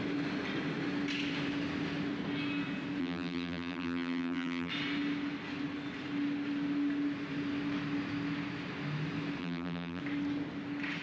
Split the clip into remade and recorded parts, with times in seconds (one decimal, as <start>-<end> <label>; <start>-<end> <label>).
0.0-3.0 recorded; 3.0-4.7 remade; 4.7-9.4 recorded; 9.4-10.0 remade; 10.0-11.0 recorded